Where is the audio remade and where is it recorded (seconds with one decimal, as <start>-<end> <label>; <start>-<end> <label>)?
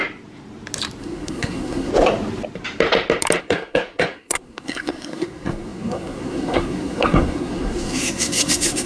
0.0-1.0 recorded; 1.0-1.9 remade; 1.9-3.4 recorded; 3.4-8.9 remade